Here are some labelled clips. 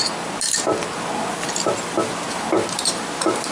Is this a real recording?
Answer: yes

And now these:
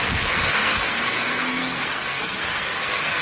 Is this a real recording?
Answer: no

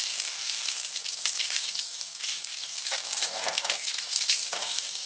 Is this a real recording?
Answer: no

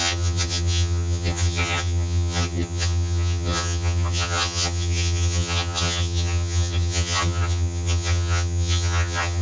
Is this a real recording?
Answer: no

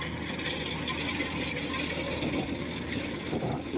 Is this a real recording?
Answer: yes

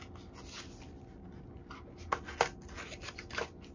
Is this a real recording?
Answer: yes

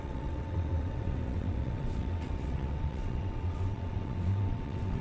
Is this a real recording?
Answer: no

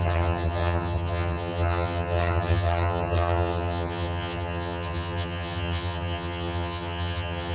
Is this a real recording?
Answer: no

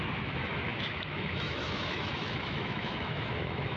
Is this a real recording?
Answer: no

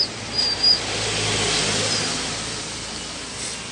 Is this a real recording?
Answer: yes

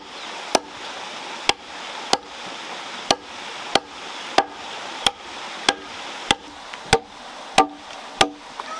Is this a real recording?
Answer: yes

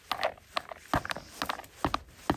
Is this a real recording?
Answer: yes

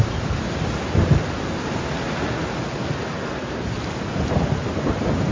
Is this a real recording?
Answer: yes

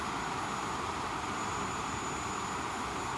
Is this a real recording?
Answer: yes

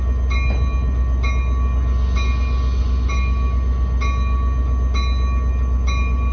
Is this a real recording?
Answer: yes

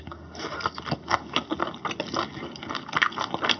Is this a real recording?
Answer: yes